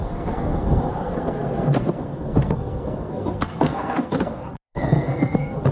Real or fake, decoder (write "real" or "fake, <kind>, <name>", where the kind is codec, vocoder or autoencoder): fake, codec, SNAC